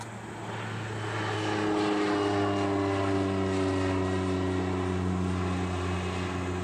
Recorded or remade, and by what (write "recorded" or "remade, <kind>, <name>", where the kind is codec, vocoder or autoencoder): recorded